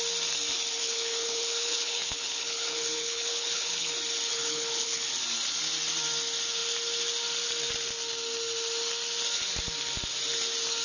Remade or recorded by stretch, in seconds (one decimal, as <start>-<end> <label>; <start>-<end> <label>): 0.0-0.8 recorded; 0.8-3.9 remade; 3.9-4.3 recorded; 4.3-5.1 remade; 5.1-10.8 recorded